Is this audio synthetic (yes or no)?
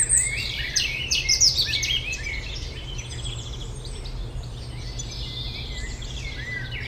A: yes